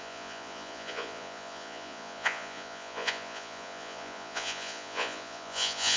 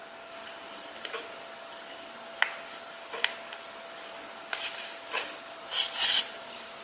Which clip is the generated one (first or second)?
first